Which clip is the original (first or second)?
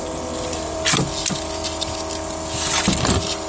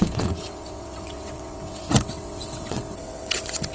first